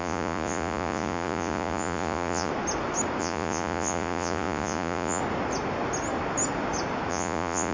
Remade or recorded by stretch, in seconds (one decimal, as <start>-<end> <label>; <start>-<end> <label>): 0.0-2.5 remade; 2.5-3.2 recorded; 3.2-5.2 remade; 5.2-7.1 recorded; 7.1-7.7 remade